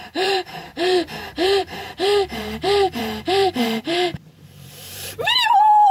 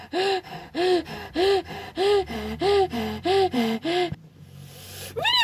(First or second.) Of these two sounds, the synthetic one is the first